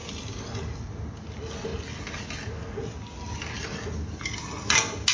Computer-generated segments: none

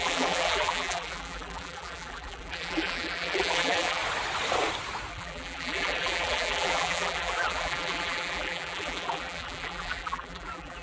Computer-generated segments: 0.0-4.0; 5.1-10.8

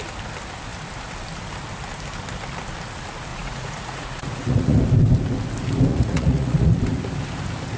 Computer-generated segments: 3.3-4.8; 5.9-6.8

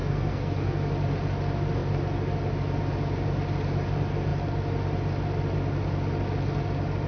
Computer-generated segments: 0.0-0.9